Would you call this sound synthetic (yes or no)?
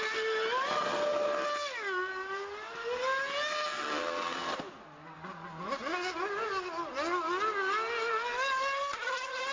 no